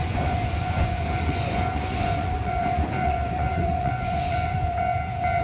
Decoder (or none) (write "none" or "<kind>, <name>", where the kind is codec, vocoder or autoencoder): vocoder, Vocos